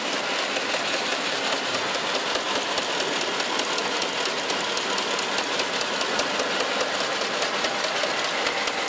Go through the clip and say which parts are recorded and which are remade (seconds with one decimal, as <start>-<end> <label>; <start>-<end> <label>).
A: 0.0-3.8 remade; 3.8-8.9 recorded